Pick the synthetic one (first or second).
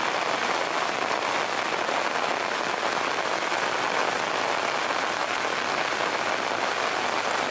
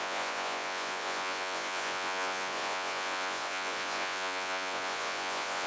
second